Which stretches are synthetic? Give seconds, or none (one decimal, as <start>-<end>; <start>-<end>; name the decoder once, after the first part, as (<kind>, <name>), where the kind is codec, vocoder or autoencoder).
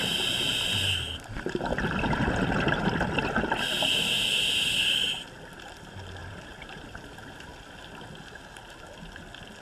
6.2-6.9 (vocoder, BigVGAN v2)